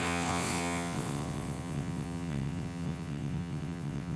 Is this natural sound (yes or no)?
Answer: no